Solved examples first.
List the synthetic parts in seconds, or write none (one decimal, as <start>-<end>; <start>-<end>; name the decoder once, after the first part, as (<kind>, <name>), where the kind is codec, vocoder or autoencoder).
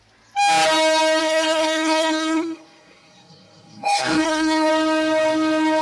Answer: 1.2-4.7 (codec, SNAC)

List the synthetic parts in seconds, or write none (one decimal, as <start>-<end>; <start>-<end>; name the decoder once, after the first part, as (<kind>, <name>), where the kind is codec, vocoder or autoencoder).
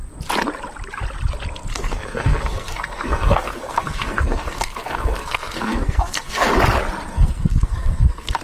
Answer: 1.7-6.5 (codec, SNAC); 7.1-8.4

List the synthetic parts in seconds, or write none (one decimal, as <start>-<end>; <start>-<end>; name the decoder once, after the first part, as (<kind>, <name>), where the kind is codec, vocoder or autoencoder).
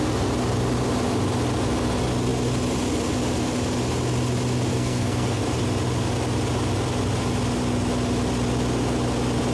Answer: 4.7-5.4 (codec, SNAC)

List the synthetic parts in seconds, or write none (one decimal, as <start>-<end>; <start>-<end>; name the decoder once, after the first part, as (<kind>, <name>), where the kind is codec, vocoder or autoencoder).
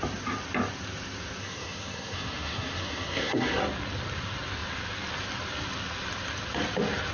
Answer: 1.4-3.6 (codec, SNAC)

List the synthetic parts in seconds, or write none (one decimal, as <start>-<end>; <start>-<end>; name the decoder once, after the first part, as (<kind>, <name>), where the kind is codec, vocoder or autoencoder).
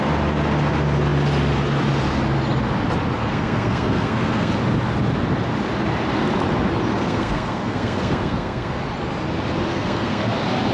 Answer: 3.2-4.5 (codec, SNAC); 6.9-8.8; 9.7-10.2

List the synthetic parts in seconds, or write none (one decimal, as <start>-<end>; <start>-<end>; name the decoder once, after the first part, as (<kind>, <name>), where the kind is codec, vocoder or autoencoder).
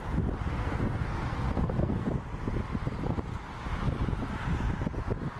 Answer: 0.5-2.1 (codec, SNAC)